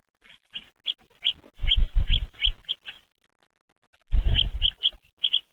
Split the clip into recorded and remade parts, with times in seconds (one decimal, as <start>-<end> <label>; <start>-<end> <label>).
0.0-5.5 recorded